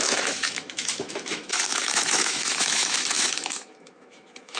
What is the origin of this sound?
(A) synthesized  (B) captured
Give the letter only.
A